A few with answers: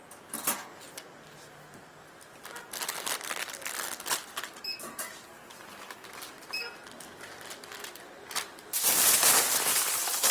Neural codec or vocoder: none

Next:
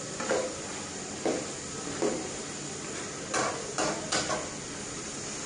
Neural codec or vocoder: none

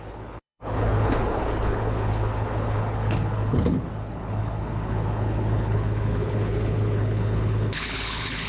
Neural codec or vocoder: codec, HILCodec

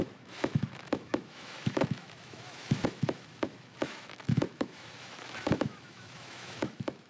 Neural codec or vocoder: autoencoder, DAC-VAE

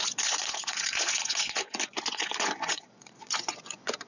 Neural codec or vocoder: vocoder, Vocos